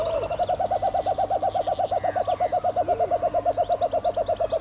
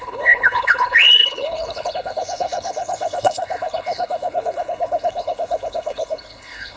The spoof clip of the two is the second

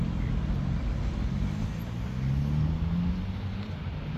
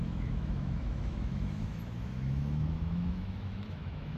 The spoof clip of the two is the second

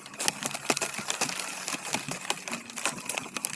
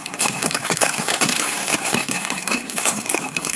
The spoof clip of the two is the second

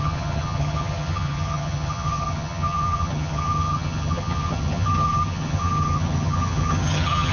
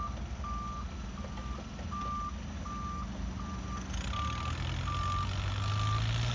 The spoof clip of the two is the first